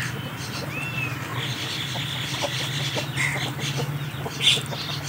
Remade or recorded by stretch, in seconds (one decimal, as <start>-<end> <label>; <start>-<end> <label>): 0.0-5.1 recorded